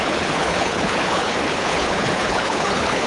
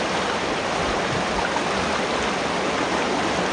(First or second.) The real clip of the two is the second